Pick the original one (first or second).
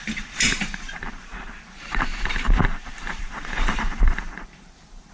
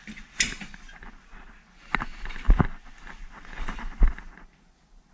second